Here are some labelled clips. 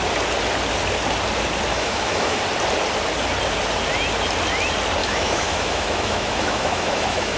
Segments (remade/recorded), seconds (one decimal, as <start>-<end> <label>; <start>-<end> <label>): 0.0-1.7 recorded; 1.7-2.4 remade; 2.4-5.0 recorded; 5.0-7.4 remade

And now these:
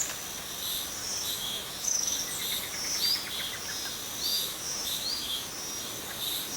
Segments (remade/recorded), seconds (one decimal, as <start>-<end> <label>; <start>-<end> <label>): 0.0-1.0 recorded; 1.0-2.2 remade; 2.2-4.3 recorded; 4.3-5.5 remade; 5.5-6.6 recorded

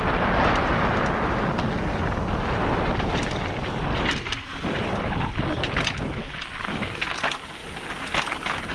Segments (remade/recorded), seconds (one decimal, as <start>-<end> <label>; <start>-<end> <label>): 0.0-8.7 recorded

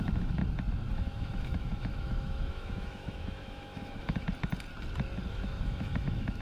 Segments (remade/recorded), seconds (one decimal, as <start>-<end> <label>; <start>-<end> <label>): 0.0-0.4 remade; 0.4-0.9 recorded; 0.9-4.3 remade; 4.3-5.3 recorded; 5.3-6.4 remade